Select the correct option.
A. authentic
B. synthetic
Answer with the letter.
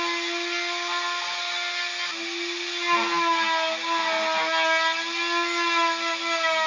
A